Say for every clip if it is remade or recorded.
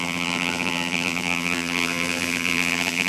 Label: remade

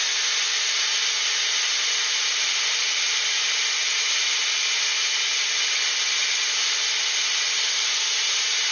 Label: recorded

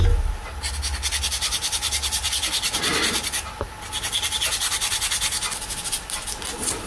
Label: recorded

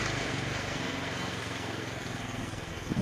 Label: remade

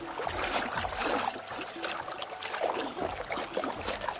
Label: recorded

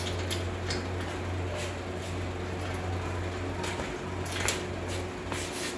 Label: recorded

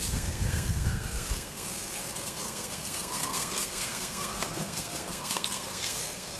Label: remade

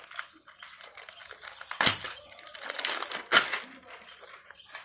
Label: recorded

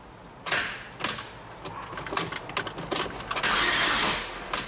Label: recorded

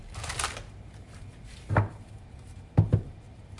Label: remade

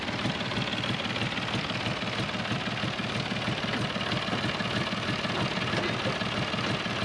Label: recorded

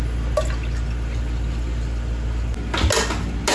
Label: recorded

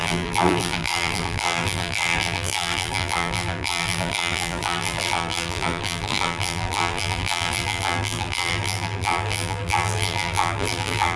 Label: remade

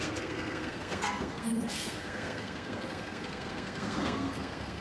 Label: remade